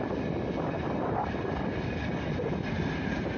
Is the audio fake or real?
real